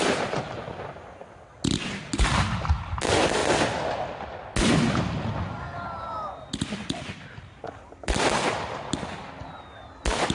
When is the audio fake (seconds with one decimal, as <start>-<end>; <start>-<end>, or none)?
none